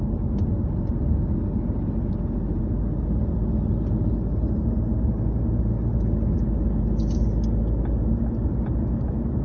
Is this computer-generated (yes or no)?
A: no